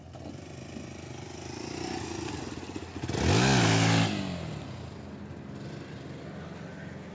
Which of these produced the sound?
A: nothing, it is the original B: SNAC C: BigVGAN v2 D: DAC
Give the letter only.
A